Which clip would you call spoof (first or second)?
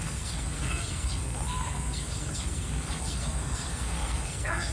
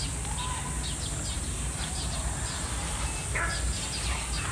first